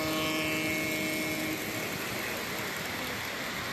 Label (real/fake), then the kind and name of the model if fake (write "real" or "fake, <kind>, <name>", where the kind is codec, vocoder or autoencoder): real